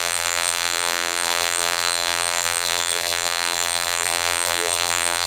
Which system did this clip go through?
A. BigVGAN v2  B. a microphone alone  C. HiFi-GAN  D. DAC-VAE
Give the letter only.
A